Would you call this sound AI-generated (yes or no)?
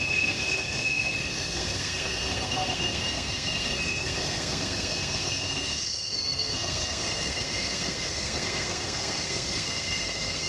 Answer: yes